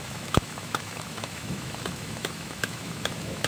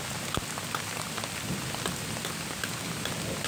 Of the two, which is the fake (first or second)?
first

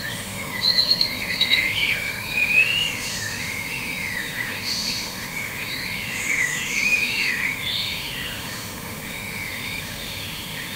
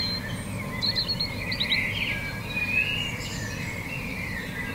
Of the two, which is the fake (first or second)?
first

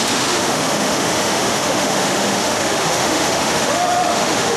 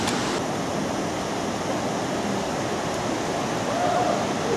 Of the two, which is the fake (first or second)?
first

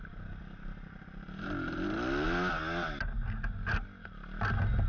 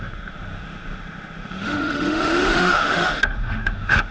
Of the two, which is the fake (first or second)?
second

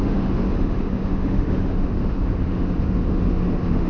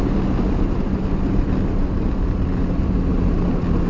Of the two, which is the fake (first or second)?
first